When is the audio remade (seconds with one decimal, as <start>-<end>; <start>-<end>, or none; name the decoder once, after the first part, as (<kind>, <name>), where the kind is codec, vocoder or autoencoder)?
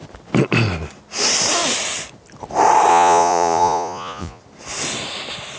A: 2.9-4.4 (vocoder, Vocos)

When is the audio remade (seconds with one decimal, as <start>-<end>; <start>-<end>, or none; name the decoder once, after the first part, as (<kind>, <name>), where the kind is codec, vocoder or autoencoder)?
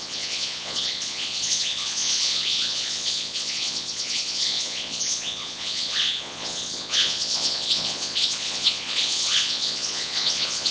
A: 0.0-10.7 (vocoder, Vocos)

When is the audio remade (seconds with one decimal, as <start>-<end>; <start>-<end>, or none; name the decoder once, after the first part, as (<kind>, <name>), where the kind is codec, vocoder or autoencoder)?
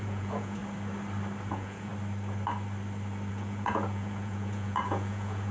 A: 0.0-0.6 (vocoder, Vocos); 1.5-1.9; 3.3-5.5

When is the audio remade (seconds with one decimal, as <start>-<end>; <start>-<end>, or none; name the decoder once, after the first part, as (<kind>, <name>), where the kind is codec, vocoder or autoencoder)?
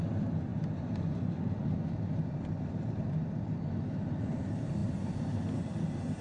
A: none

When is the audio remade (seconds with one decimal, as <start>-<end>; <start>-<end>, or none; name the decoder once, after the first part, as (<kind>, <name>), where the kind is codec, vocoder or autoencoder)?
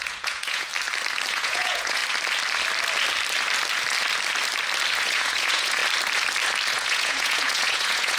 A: 0.0-0.7 (vocoder, Vocos); 1.3-2.0; 5.0-5.8; 6.7-8.2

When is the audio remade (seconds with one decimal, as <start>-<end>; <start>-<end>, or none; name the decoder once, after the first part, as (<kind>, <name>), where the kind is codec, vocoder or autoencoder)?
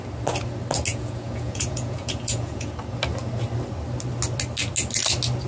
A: 0.9-2.7 (vocoder, Vocos)